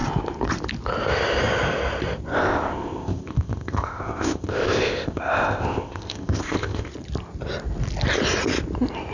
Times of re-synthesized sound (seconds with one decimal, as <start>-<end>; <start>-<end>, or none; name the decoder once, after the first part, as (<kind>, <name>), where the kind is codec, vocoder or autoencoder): 2.3-6.9 (codec, ZipCodec)